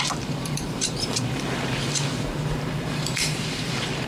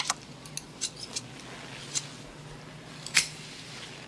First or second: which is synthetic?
first